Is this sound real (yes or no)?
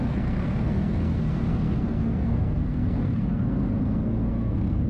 no